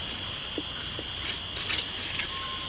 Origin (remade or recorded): recorded